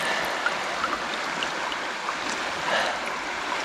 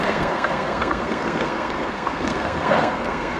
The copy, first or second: second